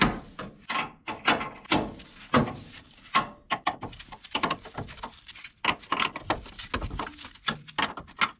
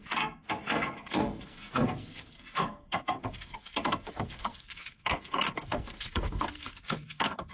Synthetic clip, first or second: second